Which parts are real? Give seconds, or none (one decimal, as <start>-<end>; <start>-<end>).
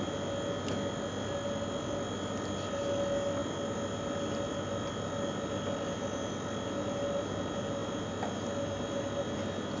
0.0-9.8